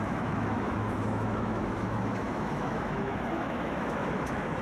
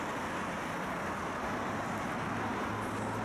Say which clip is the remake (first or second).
first